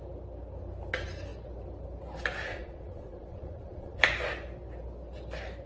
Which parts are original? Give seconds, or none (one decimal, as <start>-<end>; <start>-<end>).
0.0-2.5; 4.0-5.7